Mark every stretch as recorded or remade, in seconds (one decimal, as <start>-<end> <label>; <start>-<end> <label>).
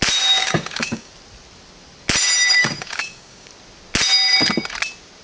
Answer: 0.0-0.4 recorded; 0.4-1.1 remade; 1.1-2.6 recorded; 2.6-3.5 remade; 3.5-5.2 recorded